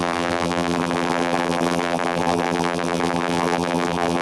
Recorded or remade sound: remade